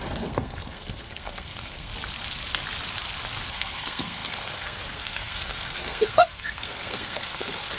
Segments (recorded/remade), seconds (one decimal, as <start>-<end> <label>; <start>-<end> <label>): 0.0-1.9 remade; 1.9-3.5 recorded; 3.5-7.8 remade